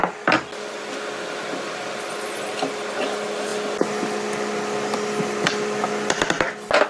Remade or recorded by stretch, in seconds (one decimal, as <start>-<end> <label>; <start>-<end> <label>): 0.0-6.9 recorded